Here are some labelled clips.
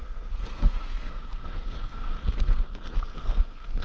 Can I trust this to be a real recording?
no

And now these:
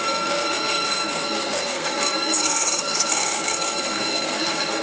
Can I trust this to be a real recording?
no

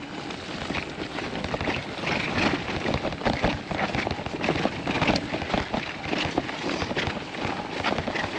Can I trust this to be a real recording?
yes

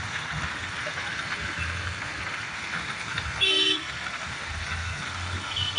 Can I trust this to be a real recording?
no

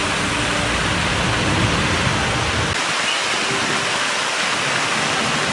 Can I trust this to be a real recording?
yes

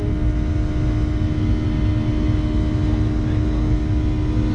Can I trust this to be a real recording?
yes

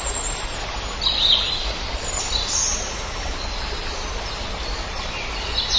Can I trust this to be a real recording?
yes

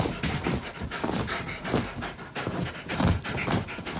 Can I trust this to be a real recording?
yes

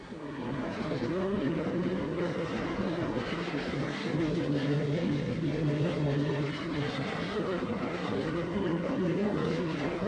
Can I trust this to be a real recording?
no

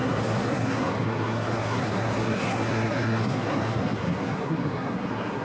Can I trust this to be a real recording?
no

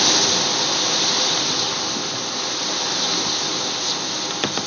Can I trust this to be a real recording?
yes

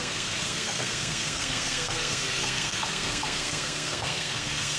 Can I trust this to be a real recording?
no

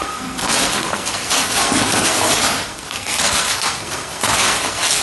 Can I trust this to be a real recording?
no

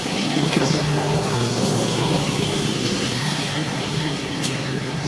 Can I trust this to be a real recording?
no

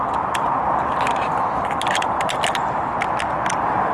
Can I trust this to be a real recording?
yes